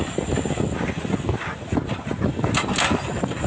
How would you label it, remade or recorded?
recorded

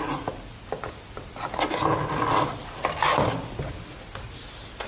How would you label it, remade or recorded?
recorded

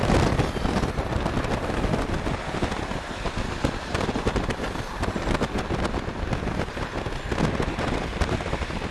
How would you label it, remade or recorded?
recorded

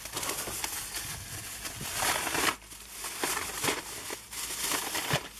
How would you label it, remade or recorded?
recorded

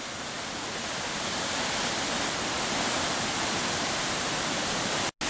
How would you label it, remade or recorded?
recorded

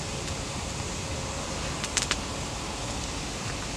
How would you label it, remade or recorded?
recorded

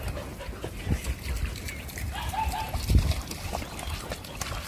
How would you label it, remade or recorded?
recorded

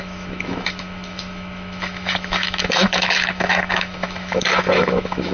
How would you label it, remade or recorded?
remade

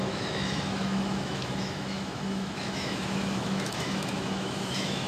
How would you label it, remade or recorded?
remade